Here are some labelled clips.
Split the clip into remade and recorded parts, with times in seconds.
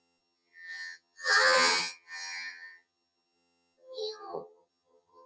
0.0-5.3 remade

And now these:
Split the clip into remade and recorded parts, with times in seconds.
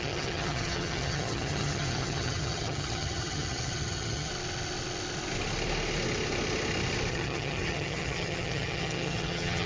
0.0-4.3 remade; 4.3-7.1 recorded; 7.1-9.7 remade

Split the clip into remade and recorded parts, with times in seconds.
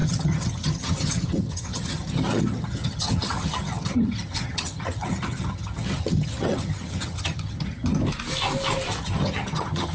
0.0-8.0 remade; 8.0-9.0 recorded; 9.0-9.9 remade